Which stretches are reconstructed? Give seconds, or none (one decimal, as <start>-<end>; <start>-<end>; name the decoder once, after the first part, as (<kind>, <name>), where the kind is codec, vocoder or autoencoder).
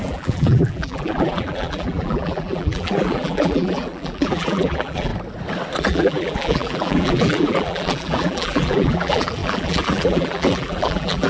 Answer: 0.0-5.1 (vocoder, BigVGAN v2); 5.8-11.3